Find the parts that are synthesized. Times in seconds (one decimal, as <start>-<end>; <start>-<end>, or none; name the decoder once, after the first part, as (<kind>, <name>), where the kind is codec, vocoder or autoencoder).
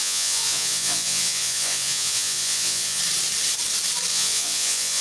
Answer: 0.0-3.0 (vocoder, Vocos); 4.1-5.0